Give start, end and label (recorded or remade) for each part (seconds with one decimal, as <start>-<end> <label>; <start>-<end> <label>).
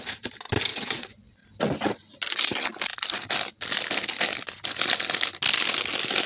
0.0-0.7 recorded; 0.7-1.3 remade; 1.3-6.3 recorded